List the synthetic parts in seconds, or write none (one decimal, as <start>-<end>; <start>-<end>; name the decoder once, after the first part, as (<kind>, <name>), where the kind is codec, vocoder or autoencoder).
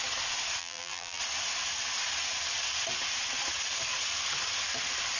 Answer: 0.6-1.2 (vocoder, BigVGAN v2)